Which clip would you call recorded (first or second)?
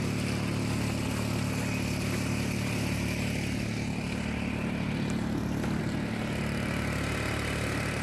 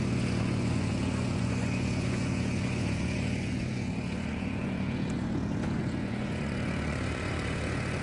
first